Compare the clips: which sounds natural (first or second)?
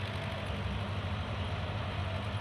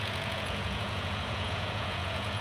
first